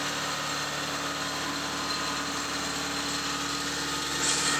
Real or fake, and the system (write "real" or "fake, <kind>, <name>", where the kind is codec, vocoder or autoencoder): real